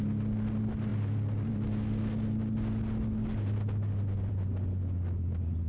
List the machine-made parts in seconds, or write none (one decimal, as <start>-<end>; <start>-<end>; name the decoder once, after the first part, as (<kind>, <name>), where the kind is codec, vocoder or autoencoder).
none